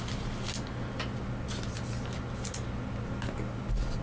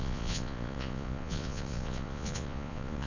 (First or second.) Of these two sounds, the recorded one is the first